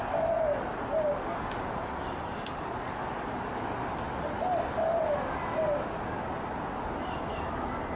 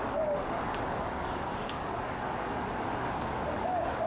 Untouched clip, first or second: first